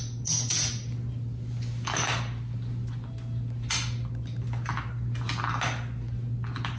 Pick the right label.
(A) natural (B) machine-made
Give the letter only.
A